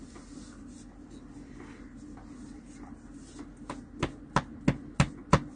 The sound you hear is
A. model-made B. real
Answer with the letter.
B